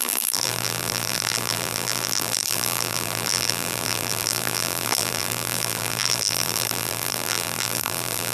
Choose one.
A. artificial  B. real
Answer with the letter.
A